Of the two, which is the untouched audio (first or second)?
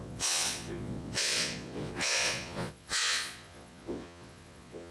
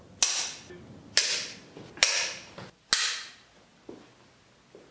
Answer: second